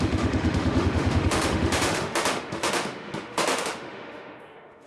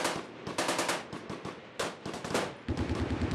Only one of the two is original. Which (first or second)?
second